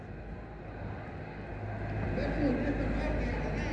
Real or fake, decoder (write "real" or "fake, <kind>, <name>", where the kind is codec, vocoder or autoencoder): real